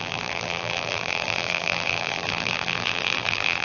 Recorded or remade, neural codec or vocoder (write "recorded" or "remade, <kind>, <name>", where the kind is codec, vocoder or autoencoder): remade, vocoder, BigVGAN v2